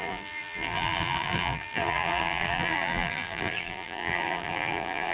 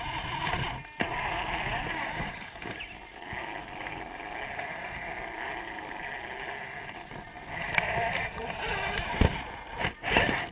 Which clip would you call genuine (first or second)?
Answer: second